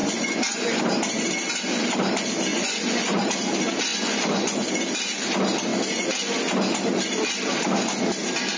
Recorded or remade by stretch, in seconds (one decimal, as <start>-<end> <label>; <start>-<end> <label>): 0.0-0.8 remade; 0.8-2.5 recorded; 2.5-3.2 remade; 3.2-3.9 recorded; 3.9-4.7 remade; 4.7-8.6 recorded